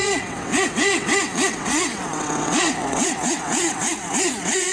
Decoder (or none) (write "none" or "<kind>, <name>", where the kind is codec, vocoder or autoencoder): vocoder, WaveNeXt